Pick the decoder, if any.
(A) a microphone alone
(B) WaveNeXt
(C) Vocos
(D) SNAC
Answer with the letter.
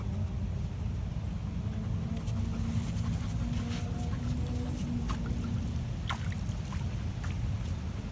A